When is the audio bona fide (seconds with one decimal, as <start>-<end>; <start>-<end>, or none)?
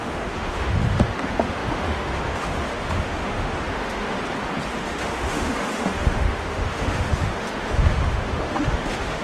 4.2-4.7